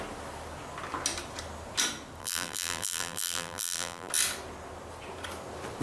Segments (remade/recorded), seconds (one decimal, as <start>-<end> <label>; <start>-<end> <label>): 0.0-2.2 recorded; 2.2-4.1 remade; 4.1-5.8 recorded